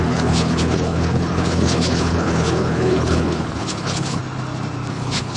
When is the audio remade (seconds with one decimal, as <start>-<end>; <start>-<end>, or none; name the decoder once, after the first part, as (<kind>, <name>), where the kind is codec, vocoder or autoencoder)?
0.0-4.2 (codec, HILCodec); 4.9-5.4